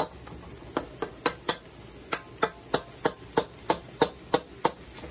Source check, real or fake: real